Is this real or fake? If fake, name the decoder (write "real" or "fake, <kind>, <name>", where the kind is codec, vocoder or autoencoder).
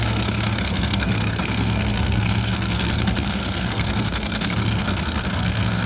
fake, codec, SNAC